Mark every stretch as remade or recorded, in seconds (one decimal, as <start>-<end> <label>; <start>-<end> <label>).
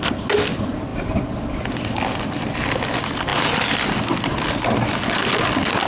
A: 0.0-5.9 recorded